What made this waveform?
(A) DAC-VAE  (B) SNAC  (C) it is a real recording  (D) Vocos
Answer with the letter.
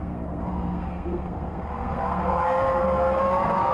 B